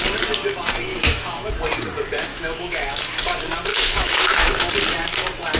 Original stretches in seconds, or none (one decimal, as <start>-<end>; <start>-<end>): 0.0-0.9; 1.5-2.3; 3.0-3.7; 4.7-5.6

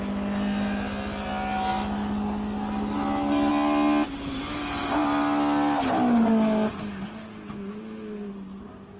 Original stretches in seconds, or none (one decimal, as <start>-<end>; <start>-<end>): 0.0-9.0